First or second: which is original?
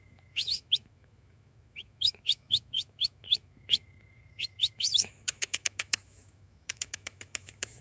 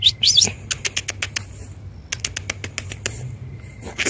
second